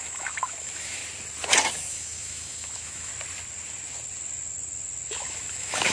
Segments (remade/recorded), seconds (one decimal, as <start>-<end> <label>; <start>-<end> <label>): 0.0-1.0 remade; 1.0-1.7 recorded; 1.7-3.1 remade; 3.1-5.1 recorded; 5.1-5.9 remade